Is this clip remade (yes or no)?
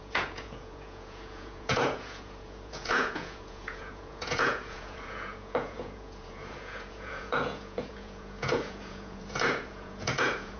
yes